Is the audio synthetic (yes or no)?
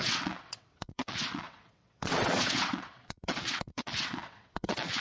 yes